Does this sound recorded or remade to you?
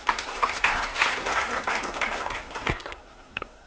remade